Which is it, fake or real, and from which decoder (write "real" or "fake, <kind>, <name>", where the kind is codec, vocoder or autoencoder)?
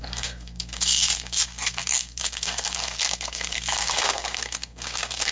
fake, codec, SNAC